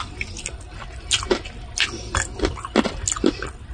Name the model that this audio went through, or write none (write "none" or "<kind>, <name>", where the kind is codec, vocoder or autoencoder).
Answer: none